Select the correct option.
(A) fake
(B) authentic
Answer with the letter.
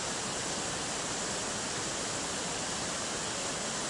B